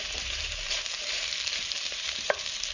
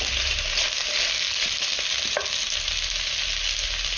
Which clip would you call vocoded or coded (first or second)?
first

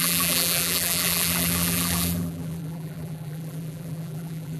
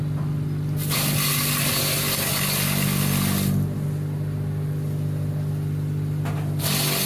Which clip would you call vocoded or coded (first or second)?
first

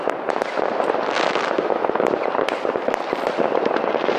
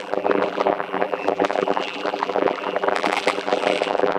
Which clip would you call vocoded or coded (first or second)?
second